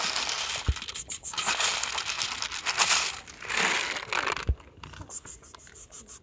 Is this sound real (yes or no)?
yes